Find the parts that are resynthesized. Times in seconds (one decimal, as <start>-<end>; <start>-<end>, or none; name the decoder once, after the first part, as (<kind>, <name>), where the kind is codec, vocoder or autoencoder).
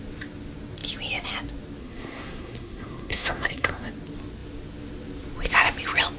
1.8-3.9 (codec, SNAC)